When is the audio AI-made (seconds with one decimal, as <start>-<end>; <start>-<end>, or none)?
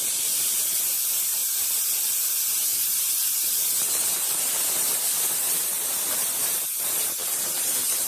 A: 0.0-8.1